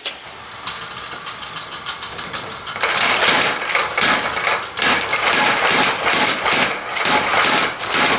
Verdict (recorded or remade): recorded